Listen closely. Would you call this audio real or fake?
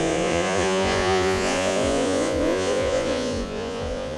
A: fake